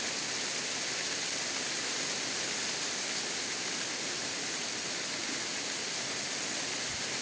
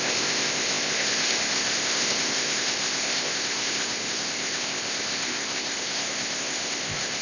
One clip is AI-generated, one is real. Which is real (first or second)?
first